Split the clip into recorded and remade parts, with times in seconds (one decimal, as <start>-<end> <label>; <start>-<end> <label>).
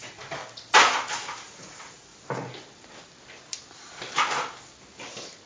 0.0-0.4 remade; 0.4-1.6 recorded; 1.6-2.1 remade; 2.1-5.5 recorded